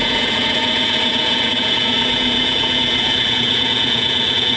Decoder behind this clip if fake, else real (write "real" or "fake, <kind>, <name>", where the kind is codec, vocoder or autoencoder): fake, vocoder, Vocos